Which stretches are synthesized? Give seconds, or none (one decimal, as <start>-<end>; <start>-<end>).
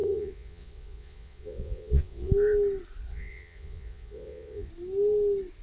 0.0-2.3; 3.1-4.7